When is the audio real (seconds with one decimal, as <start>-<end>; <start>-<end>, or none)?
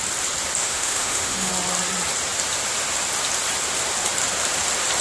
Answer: 0.0-0.6; 1.5-5.0